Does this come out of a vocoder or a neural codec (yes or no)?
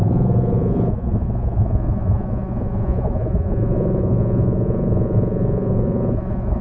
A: yes